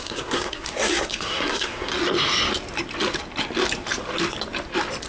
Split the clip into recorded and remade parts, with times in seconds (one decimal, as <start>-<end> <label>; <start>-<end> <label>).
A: 0.0-1.9 remade; 1.9-5.1 recorded